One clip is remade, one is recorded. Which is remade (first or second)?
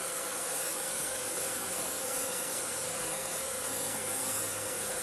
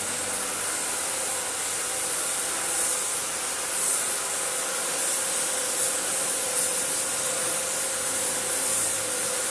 first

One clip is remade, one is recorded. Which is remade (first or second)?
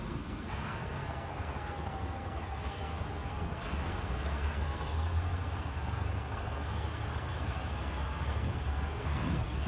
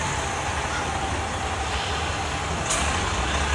first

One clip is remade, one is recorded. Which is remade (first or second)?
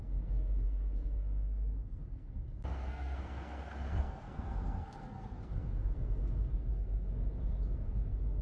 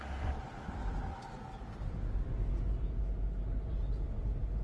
first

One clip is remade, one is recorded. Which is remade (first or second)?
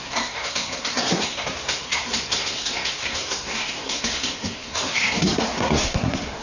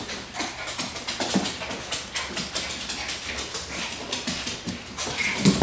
first